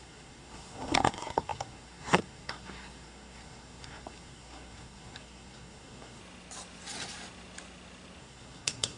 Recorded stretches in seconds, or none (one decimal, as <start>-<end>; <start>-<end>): 6.2-8.2